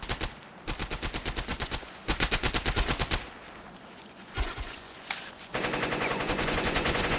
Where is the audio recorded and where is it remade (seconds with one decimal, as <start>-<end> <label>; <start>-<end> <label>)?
0.0-1.5 recorded; 1.5-2.5 remade; 2.5-4.0 recorded; 4.0-7.2 remade

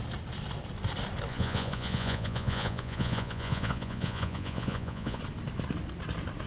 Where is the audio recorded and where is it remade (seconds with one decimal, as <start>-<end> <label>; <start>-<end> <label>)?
0.0-1.3 recorded; 1.3-5.2 remade; 5.2-6.5 recorded

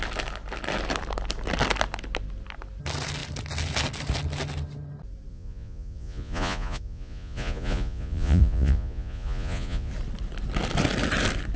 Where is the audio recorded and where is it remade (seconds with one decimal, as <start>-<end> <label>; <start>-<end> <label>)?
0.0-5.3 recorded; 5.3-9.9 remade; 9.9-11.6 recorded

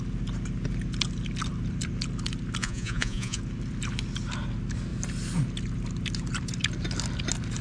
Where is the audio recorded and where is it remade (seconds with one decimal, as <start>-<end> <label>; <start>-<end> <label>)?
0.0-2.6 recorded; 2.6-3.4 remade; 3.4-7.6 recorded

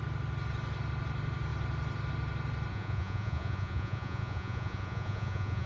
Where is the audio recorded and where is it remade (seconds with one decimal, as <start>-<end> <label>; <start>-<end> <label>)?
0.0-2.7 recorded; 2.7-5.7 remade

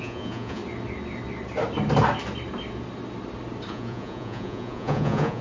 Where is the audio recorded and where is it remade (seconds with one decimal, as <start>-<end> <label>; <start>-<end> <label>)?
0.0-0.6 remade; 0.6-3.7 recorded; 3.7-5.4 remade

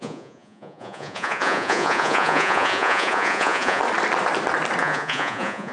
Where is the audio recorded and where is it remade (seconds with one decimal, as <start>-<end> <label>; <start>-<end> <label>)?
0.0-3.8 remade; 3.8-4.8 recorded; 4.8-5.7 remade